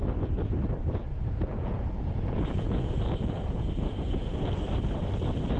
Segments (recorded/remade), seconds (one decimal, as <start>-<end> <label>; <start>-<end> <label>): 0.0-1.1 recorded; 1.1-4.5 remade; 4.5-5.6 recorded